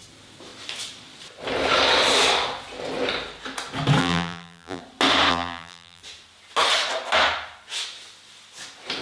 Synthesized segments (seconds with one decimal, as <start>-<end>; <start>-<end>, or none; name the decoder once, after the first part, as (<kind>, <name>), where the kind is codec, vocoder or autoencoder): 4.0-4.8 (vocoder, BigVGAN v2); 5.3-6.0